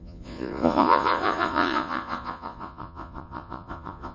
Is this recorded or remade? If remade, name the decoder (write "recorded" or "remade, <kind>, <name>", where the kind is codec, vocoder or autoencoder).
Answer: remade, vocoder, Vocos